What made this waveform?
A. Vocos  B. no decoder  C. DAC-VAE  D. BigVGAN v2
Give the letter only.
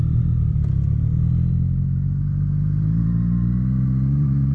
B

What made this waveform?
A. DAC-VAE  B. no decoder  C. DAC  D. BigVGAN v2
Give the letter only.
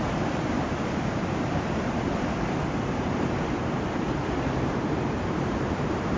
D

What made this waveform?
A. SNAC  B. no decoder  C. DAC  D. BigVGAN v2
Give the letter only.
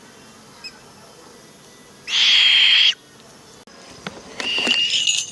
B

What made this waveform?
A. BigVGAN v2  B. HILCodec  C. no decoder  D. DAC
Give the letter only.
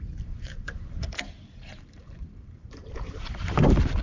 A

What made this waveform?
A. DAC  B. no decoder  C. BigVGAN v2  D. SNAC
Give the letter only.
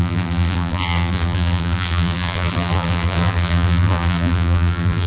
C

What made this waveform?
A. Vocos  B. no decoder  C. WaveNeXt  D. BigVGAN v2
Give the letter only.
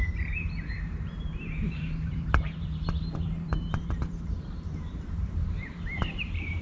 D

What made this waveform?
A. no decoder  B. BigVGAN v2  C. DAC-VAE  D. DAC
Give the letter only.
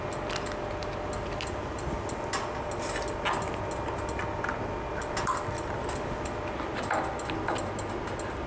A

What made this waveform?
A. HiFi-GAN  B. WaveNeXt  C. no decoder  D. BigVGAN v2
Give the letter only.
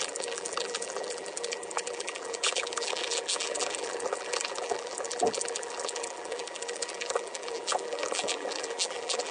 D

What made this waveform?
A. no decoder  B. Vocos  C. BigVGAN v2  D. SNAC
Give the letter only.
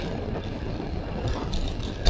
C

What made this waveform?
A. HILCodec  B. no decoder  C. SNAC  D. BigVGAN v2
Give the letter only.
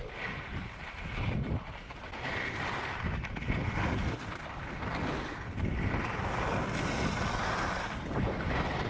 B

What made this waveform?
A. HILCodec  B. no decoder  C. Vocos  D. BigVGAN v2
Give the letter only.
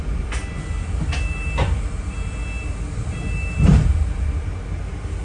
B